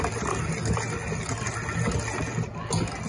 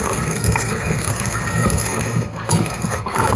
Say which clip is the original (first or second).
first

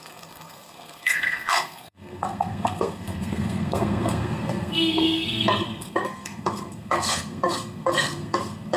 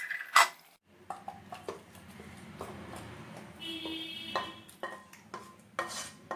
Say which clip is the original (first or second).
second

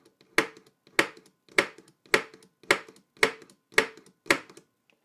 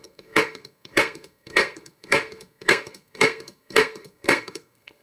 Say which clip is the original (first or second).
first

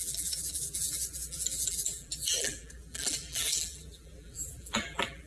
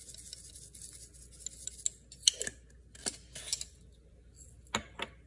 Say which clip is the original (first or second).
second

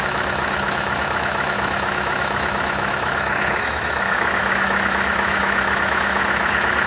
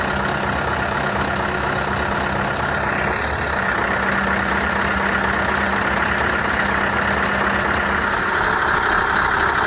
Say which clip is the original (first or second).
second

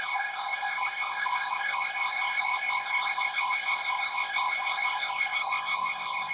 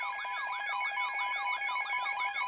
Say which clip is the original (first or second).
second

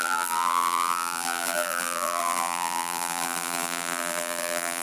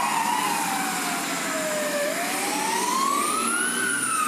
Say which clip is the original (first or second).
second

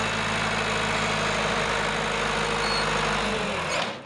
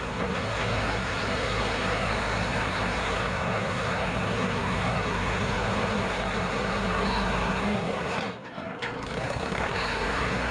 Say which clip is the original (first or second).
first